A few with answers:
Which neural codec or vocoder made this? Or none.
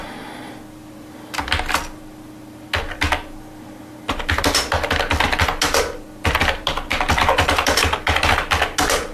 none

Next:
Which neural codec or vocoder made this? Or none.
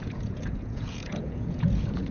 vocoder, Vocos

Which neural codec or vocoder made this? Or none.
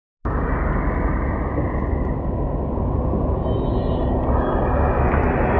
none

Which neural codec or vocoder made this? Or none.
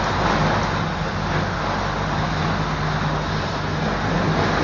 none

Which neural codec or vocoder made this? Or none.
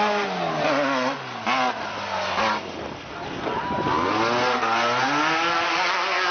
none